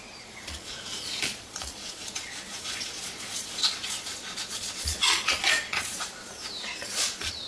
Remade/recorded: remade